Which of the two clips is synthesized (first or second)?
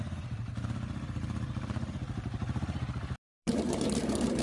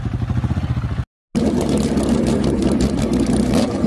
first